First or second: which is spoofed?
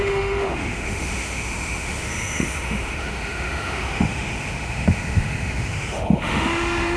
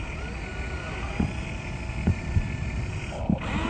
first